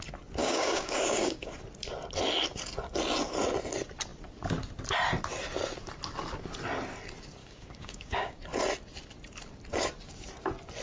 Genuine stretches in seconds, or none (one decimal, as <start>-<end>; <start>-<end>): 0.0-0.4; 1.5-7.4; 8.4-10.8